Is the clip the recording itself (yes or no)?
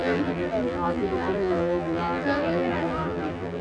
no